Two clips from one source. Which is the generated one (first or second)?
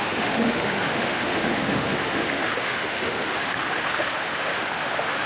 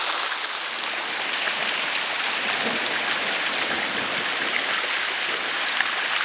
first